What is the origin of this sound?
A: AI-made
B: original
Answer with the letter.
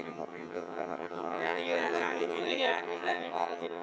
A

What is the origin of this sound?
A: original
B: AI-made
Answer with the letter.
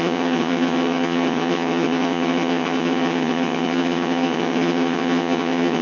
B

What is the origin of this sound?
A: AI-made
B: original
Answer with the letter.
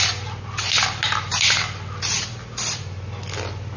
B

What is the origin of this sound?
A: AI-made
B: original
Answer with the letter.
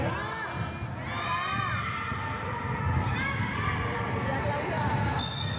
B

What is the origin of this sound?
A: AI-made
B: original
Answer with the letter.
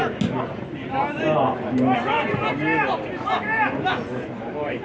B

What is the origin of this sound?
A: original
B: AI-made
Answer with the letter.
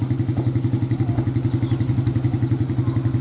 A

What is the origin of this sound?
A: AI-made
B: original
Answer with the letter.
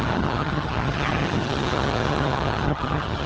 A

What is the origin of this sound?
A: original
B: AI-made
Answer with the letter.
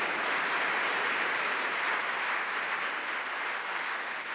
A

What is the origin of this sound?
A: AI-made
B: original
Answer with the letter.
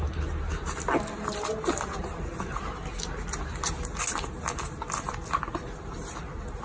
B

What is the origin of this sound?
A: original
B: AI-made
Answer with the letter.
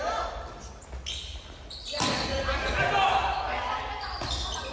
A